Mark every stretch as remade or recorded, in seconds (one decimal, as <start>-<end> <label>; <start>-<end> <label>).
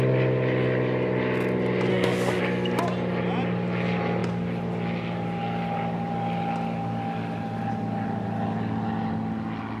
0.0-1.9 recorded; 1.9-2.4 remade; 2.4-9.8 recorded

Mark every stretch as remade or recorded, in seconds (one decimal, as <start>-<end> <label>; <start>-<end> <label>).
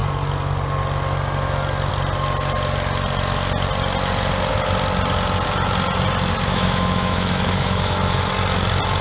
0.0-6.5 recorded; 6.5-8.3 remade; 8.3-9.0 recorded